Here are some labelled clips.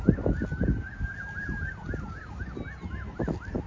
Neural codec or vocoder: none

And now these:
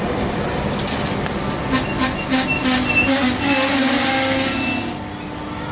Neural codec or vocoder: none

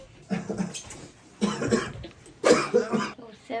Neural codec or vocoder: none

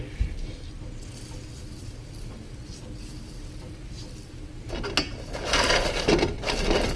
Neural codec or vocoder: none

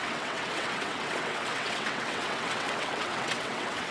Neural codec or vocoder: vocoder, WaveNeXt